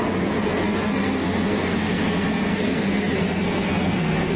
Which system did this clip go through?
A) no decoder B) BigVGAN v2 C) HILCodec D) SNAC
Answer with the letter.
D